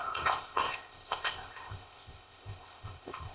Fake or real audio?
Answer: fake